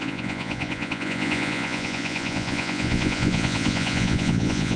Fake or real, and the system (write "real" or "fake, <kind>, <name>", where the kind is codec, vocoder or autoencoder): fake, vocoder, Vocos